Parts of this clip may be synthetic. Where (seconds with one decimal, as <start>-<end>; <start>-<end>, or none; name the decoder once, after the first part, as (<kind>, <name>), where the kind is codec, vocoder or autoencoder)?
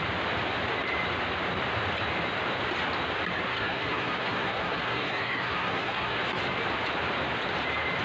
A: 3.5-6.2 (codec, SNAC)